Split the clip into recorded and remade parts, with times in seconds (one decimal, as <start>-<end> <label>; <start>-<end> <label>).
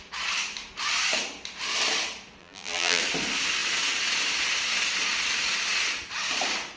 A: 0.0-2.4 recorded; 2.4-3.0 remade; 3.0-6.8 recorded